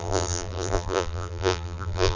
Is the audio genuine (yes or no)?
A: no